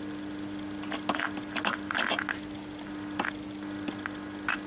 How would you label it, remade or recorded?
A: recorded